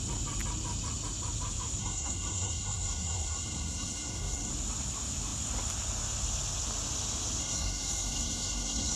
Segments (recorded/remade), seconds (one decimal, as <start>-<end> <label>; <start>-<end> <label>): 0.0-1.8 recorded; 1.8-4.5 remade; 4.5-7.4 recorded; 7.4-9.0 remade